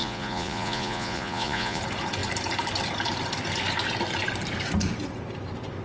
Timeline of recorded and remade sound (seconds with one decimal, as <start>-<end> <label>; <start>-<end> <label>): 0.0-1.8 remade; 1.8-5.8 recorded